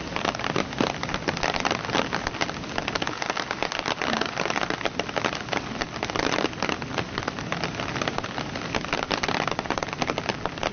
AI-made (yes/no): no